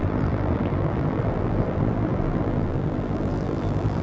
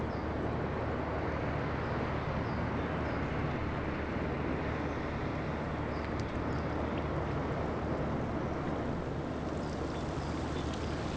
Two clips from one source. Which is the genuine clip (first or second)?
second